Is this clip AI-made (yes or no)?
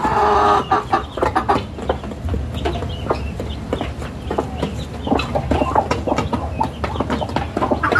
no